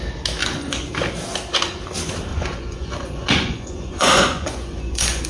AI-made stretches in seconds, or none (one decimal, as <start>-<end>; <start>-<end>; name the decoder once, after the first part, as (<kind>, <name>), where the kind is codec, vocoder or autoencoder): 0.4-0.9 (vocoder, Vocos); 2.3-5.3